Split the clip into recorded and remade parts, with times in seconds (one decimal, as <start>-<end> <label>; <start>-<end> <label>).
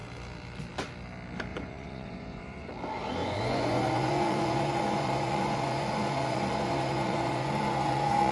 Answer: 0.0-1.5 recorded; 1.5-2.7 remade; 2.7-3.2 recorded; 3.2-8.3 remade